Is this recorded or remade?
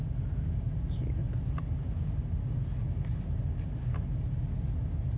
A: recorded